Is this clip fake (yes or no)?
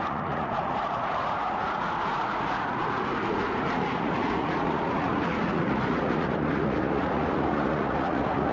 yes